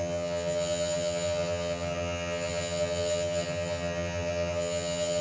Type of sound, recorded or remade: remade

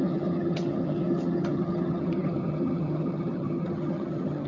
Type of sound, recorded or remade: remade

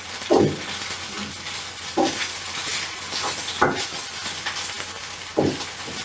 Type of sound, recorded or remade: recorded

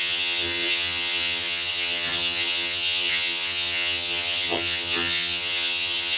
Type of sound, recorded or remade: remade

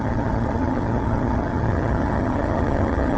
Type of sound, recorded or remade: remade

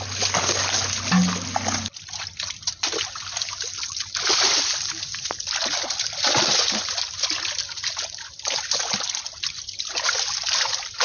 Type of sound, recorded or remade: recorded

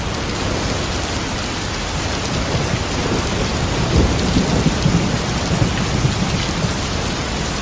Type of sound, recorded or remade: recorded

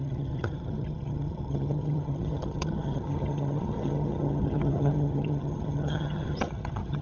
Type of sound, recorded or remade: remade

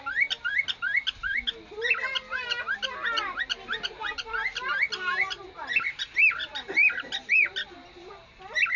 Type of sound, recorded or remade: recorded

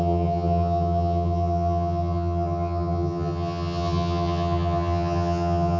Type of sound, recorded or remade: remade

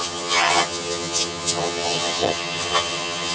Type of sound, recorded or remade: remade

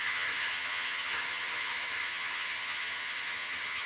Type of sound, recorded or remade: remade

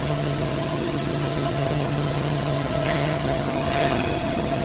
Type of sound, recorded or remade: remade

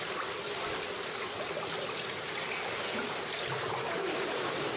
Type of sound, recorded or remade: recorded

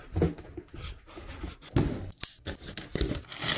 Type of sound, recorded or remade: recorded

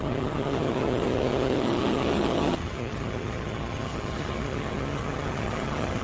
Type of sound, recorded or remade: remade